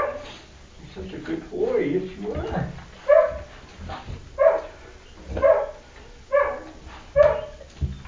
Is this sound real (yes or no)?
yes